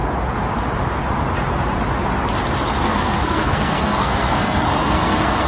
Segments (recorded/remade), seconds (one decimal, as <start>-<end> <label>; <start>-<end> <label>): 0.0-2.8 recorded; 2.8-5.5 remade